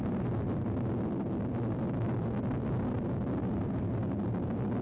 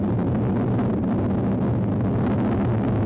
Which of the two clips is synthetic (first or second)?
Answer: first